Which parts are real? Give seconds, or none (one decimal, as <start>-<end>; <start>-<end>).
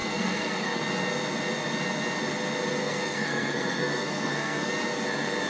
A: 0.8-2.8; 4.7-5.5